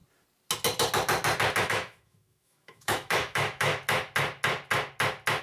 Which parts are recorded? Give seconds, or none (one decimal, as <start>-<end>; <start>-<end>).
0.0-1.6; 3.7-5.4